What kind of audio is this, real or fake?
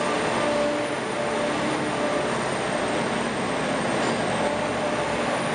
real